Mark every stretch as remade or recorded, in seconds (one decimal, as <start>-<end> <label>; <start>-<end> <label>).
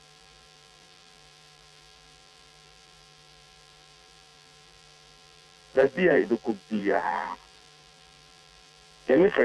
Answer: 0.0-9.4 remade